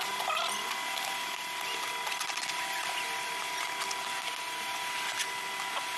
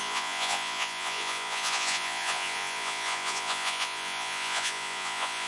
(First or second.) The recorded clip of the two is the first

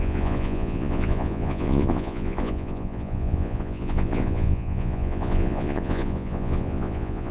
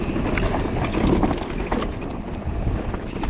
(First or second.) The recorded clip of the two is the second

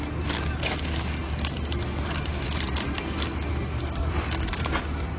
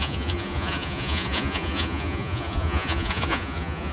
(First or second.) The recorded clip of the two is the first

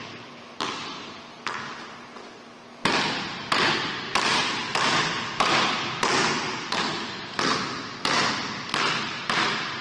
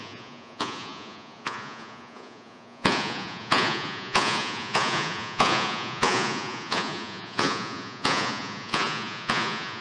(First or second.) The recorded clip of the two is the first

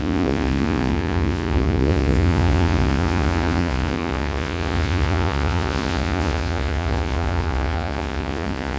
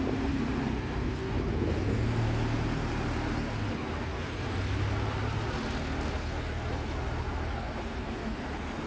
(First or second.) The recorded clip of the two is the second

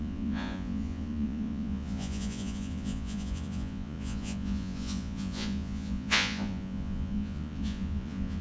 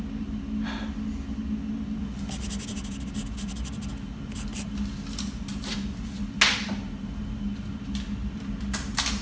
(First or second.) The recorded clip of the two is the second